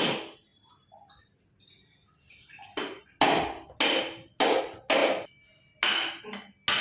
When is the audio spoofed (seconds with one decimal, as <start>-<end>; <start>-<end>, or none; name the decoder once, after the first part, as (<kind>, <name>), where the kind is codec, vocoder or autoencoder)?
none